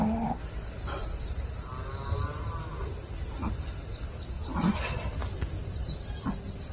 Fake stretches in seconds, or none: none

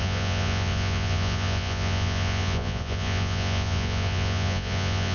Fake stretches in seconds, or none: 0.0-5.1 (vocoder, Vocos)